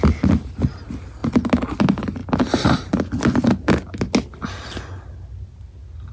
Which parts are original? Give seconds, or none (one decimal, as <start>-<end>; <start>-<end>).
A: 0.0-6.1